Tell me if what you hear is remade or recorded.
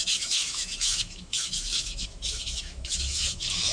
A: remade